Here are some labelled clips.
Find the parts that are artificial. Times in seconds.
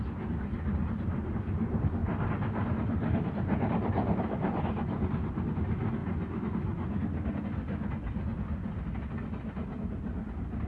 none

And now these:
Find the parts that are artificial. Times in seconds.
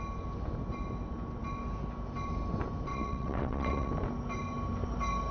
2.9-3.9 (vocoder, WaveNeXt)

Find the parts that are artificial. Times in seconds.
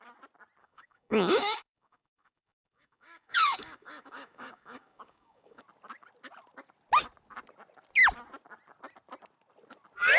0.6-5.6 (codec, DAC)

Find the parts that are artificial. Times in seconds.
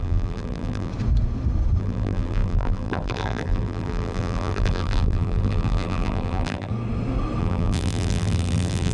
0.0-0.9 (vocoder, BigVGAN v2); 1.8-6.7; 7.4-8.9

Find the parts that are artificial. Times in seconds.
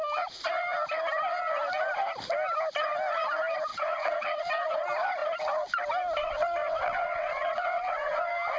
3.7-4.5 (vocoder, WaveNeXt); 6.2-8.2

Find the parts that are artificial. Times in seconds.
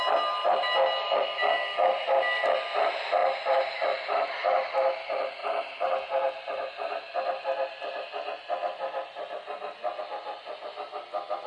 none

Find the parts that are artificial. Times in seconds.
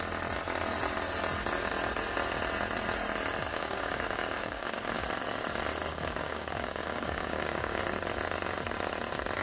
3.5-5.0 (codec, DAC); 5.9-7.8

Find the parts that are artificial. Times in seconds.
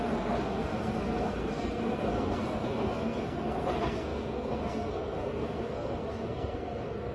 0.0-7.1 (codec, SNAC)